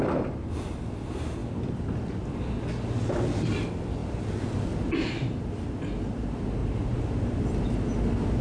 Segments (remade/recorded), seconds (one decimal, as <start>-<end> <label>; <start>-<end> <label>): 0.0-6.6 recorded; 6.6-7.5 remade; 7.5-8.4 recorded